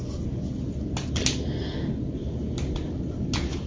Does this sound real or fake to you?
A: real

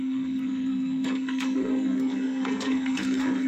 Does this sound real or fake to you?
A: fake